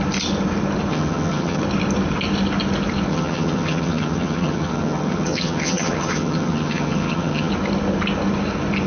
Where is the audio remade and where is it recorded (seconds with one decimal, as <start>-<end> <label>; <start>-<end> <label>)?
0.0-0.9 recorded; 0.9-1.6 remade; 1.6-3.1 recorded; 3.1-7.5 remade; 7.5-8.9 recorded